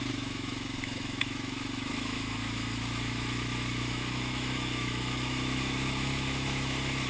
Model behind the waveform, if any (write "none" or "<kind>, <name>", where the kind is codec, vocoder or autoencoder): autoencoder, DAC-VAE